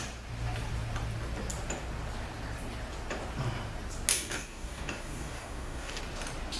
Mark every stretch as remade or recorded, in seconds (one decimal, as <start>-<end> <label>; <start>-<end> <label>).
0.0-4.1 recorded; 4.1-6.0 remade; 6.0-6.6 recorded